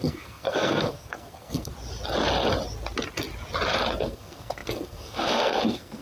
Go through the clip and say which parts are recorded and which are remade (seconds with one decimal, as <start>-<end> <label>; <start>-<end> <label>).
0.0-1.7 remade; 1.7-4.0 recorded; 4.0-6.0 remade